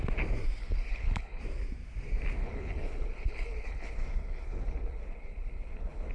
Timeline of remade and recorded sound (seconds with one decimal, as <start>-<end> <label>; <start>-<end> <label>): 0.0-0.6 recorded; 0.6-1.4 remade; 1.4-2.4 recorded; 2.4-6.1 remade